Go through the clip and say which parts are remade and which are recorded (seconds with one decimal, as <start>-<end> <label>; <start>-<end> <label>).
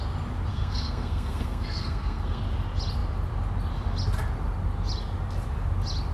0.0-0.5 recorded; 0.5-2.4 remade; 2.4-6.1 recorded